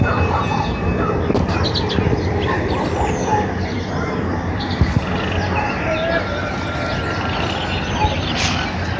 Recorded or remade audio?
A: recorded